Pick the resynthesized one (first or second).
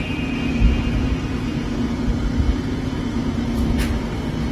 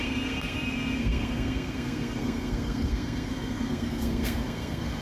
second